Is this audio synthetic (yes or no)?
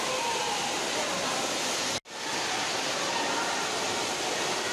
no